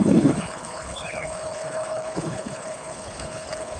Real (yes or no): no